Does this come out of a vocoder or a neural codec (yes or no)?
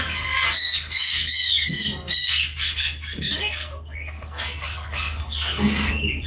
yes